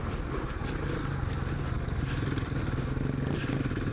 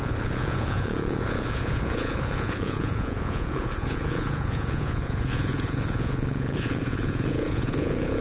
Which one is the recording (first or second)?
first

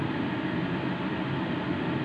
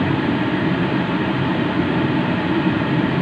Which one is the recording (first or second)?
first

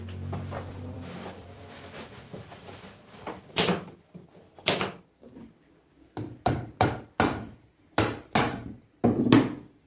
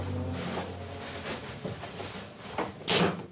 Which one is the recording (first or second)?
second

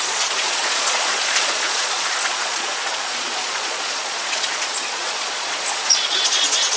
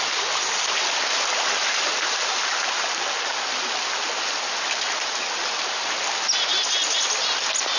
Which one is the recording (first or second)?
second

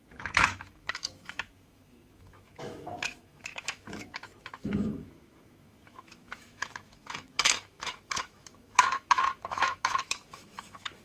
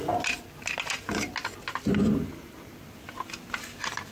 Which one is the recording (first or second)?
second